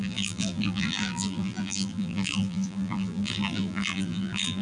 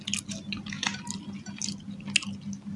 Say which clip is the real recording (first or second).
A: second